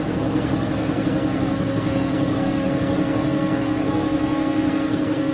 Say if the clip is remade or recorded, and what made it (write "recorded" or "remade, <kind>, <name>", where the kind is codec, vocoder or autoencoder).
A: remade, codec, SNAC